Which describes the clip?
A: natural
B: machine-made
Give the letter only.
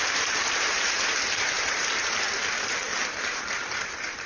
B